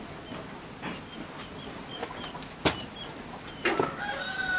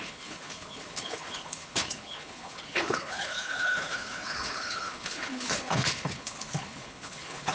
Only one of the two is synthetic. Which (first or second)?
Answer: second